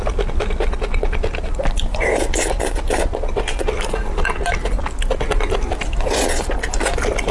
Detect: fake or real real